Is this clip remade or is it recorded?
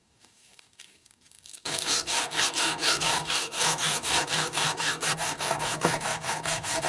remade